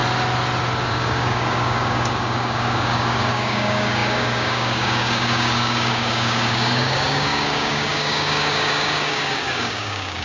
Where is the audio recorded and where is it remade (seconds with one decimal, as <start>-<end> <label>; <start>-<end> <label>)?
0.0-0.9 recorded; 0.9-10.2 remade